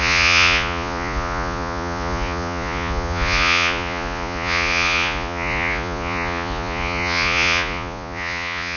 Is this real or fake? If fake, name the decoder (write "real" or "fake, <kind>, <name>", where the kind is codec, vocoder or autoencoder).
fake, vocoder, Vocos